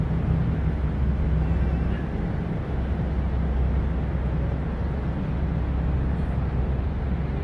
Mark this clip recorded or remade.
recorded